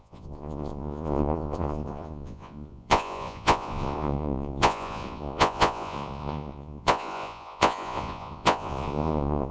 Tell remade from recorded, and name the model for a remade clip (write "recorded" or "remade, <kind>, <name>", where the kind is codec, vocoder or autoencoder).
remade, vocoder, Vocos